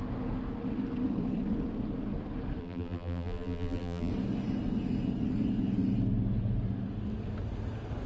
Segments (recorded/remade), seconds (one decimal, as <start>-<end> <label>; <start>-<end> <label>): 0.0-2.6 recorded; 2.6-4.1 remade; 4.1-8.1 recorded